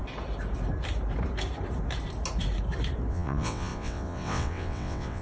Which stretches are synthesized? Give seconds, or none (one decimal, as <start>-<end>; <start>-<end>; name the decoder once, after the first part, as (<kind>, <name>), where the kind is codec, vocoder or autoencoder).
3.1-5.2 (vocoder, WaveNeXt)